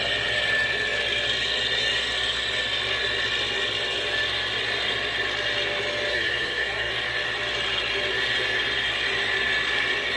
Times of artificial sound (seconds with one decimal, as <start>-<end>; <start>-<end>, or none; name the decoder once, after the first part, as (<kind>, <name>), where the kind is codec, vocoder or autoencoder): 6.1-6.9 (codec, SNAC)

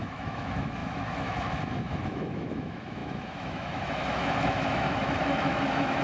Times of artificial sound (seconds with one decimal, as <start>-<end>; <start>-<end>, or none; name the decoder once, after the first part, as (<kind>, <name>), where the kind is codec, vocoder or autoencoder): 0.0-6.0 (autoencoder, DAC-VAE)

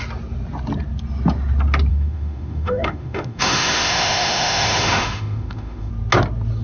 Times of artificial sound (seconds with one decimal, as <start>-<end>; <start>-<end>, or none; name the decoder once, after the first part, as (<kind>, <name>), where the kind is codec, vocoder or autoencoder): 1.9-5.9 (autoencoder, DAC-VAE)